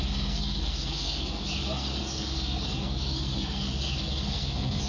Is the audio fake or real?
fake